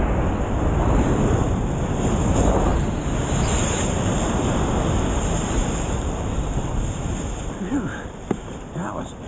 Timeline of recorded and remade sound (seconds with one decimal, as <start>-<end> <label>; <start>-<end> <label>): 0.0-9.3 recorded